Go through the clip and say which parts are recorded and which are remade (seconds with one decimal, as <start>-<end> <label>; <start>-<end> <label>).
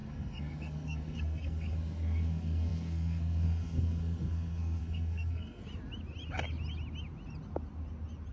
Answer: 0.0-5.6 remade; 5.6-8.3 recorded